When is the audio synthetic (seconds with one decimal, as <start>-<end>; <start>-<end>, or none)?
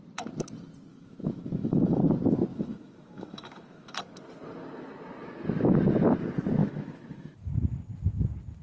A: 0.9-2.0; 2.5-4.0; 6.6-7.5